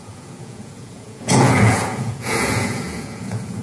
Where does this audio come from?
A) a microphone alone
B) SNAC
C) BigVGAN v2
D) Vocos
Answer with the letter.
D